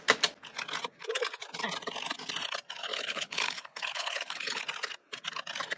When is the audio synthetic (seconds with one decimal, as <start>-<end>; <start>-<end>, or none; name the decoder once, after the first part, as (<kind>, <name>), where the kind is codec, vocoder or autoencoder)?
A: 2.9-4.6 (codec, HILCodec)